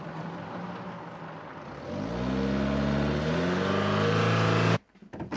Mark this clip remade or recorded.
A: recorded